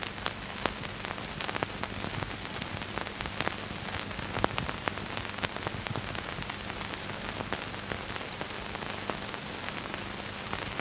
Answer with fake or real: real